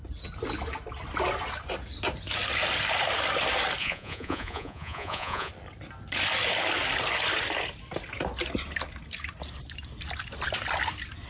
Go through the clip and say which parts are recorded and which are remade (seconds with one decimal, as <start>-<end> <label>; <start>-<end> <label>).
0.0-3.8 recorded; 3.8-5.5 remade; 5.5-11.3 recorded